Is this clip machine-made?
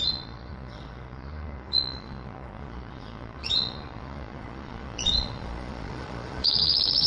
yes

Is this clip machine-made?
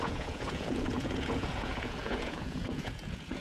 yes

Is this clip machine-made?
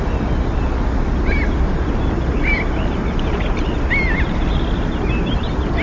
no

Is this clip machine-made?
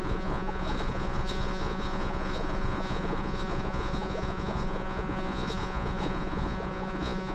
yes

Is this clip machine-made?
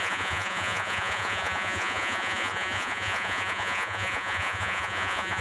yes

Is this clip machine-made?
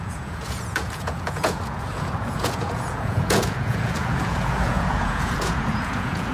yes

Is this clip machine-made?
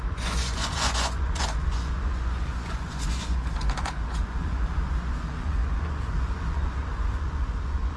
yes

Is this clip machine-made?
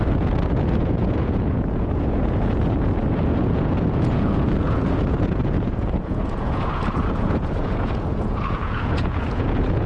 yes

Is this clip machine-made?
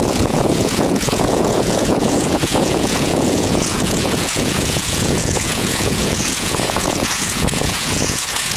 yes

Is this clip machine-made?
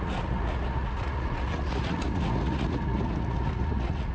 yes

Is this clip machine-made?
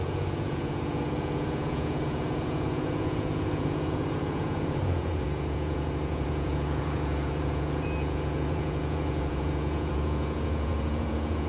yes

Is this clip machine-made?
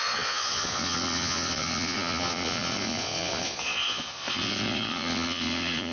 yes